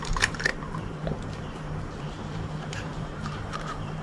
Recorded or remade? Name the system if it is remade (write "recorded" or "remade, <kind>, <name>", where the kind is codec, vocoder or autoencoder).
remade, vocoder, BigVGAN v2